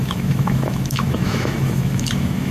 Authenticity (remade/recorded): remade